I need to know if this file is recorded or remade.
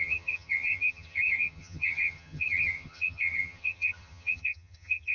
remade